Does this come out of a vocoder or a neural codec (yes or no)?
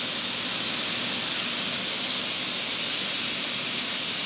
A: no